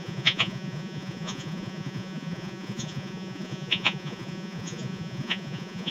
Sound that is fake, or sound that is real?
fake